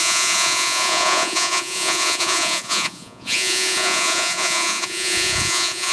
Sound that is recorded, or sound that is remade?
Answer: remade